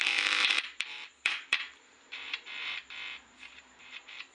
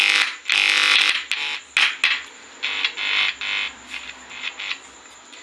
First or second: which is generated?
first